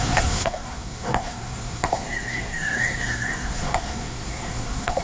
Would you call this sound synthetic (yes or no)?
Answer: yes